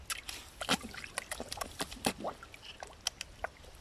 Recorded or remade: recorded